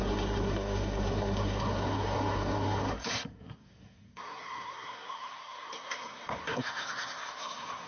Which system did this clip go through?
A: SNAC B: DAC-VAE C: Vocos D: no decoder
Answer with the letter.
A